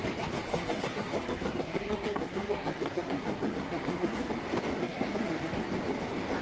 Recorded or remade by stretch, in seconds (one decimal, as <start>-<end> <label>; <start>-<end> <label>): 0.0-0.5 recorded; 0.5-4.3 remade; 4.3-4.8 recorded; 4.8-5.5 remade; 5.5-6.4 recorded

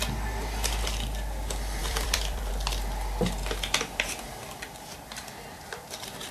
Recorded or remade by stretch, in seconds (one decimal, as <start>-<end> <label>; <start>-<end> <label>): 0.0-1.8 recorded; 1.8-2.5 remade; 2.5-6.3 recorded

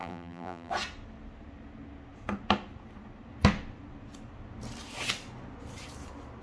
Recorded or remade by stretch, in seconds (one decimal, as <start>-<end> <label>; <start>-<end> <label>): 0.0-0.7 remade; 0.7-6.4 recorded

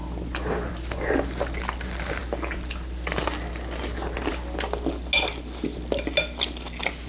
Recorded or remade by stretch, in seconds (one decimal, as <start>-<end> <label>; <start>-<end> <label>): 0.0-7.1 recorded

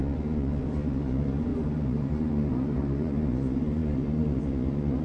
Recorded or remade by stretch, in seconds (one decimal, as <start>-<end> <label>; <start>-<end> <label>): 0.0-5.0 remade